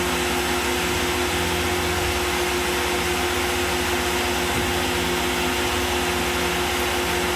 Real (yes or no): yes